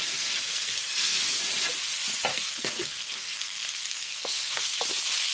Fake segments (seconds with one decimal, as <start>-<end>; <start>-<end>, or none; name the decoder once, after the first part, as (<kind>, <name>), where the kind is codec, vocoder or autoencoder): 0.0-1.4 (codec, SNAC); 2.3-4.8